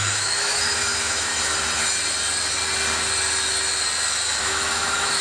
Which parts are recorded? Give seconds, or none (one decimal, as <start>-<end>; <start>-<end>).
1.3-4.4

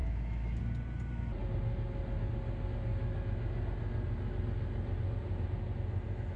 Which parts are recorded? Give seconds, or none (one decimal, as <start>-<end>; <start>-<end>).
0.6-6.4

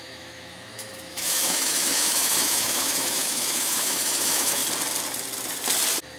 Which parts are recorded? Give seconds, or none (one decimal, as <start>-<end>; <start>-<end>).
4.6-6.2

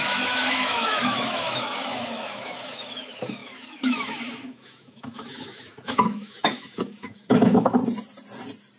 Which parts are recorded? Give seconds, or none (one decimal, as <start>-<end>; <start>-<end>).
7.8-8.8

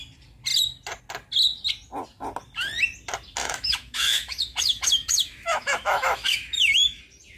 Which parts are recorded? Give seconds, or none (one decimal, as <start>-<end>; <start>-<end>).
0.0-3.4; 7.0-7.4

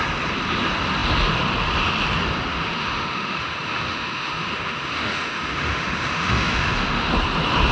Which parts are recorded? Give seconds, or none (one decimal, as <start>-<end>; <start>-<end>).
0.0-2.5; 7.1-7.7

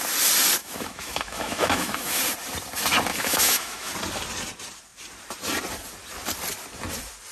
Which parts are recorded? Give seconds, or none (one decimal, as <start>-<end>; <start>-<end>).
0.0-0.6; 2.2-3.1; 3.9-7.3

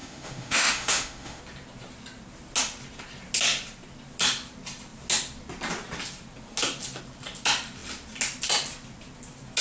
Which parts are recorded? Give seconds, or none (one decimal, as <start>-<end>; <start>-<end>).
1.4-9.6